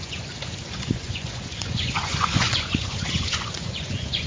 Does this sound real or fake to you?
fake